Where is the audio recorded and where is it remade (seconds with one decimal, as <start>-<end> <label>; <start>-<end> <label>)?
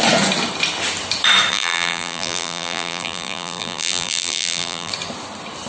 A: 0.0-1.5 recorded; 1.5-4.9 remade; 4.9-5.7 recorded